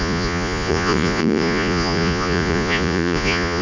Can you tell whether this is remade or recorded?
remade